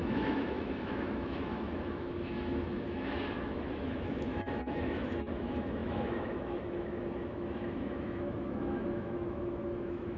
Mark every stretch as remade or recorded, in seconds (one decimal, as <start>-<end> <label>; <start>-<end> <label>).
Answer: 0.0-10.2 remade